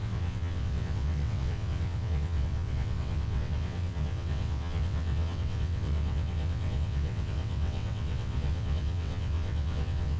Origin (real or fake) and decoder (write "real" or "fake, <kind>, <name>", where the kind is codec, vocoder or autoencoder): fake, vocoder, WaveNeXt